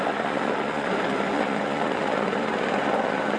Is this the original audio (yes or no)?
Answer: no